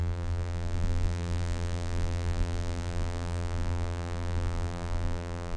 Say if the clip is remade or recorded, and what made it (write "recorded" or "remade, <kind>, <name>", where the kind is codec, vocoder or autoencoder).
remade, vocoder, BigVGAN v2